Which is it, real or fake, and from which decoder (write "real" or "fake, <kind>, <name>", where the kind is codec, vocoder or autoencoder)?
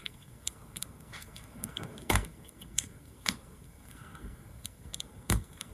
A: fake, codec, SNAC